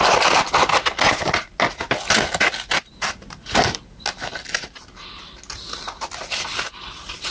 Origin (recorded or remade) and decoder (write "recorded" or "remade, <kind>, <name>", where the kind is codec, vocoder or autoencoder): recorded